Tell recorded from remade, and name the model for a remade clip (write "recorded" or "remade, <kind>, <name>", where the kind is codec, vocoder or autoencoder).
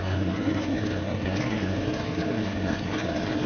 remade, codec, SNAC